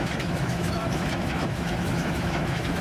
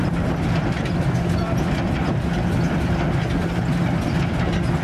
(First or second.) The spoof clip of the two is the first